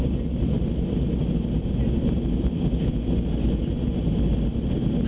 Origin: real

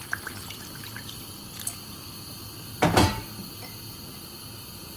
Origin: real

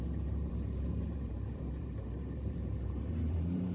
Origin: fake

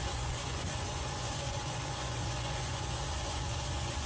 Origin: fake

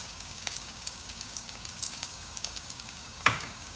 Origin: fake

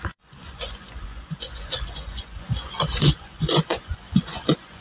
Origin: fake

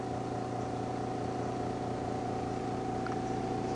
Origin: real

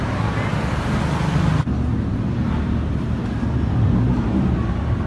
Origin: real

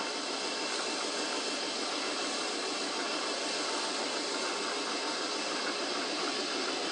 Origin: fake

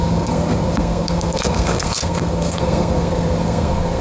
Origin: fake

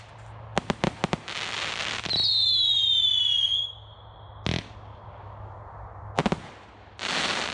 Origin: real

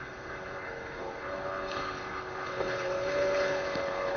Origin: fake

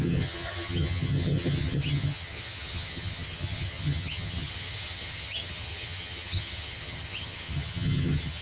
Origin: fake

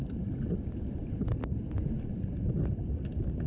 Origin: real